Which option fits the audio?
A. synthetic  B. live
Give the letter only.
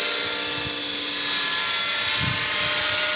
B